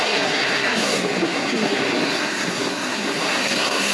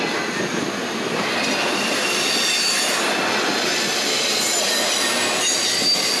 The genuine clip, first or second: second